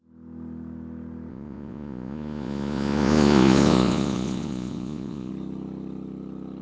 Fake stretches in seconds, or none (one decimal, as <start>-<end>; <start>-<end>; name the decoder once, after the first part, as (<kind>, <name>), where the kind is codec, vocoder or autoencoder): 1.3-5.3 (vocoder, Vocos)